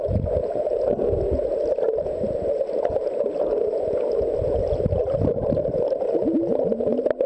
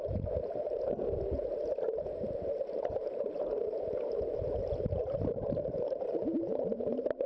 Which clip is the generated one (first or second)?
second